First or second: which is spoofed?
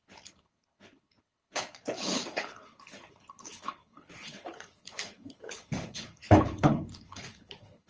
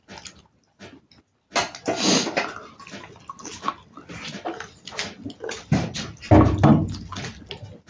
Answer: first